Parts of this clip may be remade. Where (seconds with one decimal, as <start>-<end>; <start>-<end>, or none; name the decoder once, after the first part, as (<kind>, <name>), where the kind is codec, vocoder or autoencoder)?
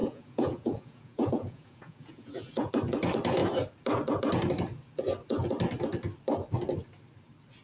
0.0-2.7 (vocoder, Vocos)